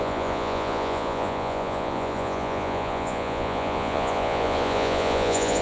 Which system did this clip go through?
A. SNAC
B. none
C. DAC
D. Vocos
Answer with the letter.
D